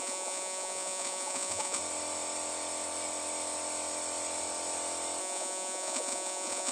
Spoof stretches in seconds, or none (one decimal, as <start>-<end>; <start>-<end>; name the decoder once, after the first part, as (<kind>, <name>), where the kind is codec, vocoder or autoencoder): 0.0-1.8 (vocoder, Vocos); 5.2-6.7